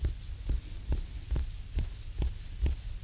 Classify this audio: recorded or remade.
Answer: recorded